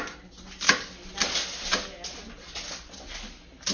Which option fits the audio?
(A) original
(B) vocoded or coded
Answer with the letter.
A